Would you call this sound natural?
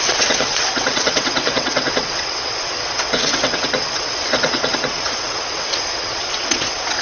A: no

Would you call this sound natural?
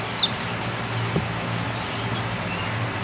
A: yes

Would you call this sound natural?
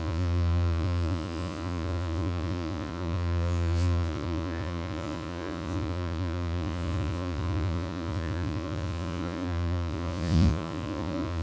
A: no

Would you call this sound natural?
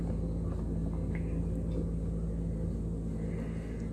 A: yes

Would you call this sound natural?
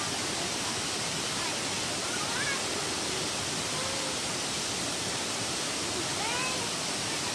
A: yes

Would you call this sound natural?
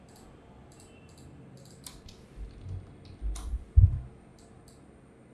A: yes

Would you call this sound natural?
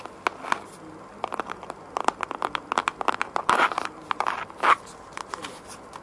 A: yes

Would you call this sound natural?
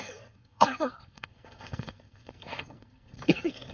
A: no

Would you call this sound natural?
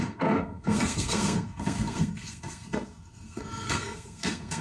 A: no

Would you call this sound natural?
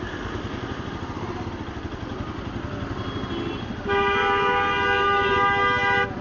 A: yes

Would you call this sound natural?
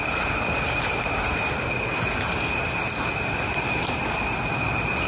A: yes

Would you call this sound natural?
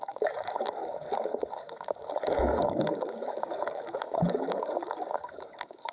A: no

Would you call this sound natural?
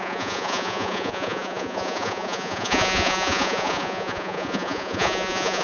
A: no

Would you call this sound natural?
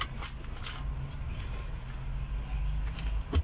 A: yes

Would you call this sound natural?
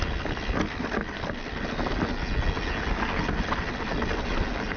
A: yes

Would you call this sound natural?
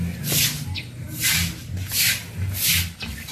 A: yes